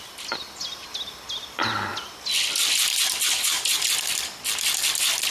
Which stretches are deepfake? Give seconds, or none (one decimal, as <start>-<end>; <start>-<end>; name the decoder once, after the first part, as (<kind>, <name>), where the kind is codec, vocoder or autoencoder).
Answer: none